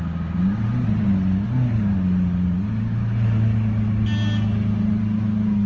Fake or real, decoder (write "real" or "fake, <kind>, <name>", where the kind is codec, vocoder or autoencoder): real